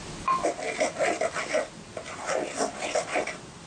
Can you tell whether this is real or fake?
real